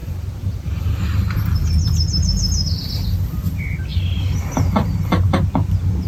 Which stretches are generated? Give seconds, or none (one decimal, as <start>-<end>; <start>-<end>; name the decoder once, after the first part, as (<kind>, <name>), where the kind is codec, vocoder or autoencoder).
0.0-1.0 (vocoder, BigVGAN v2)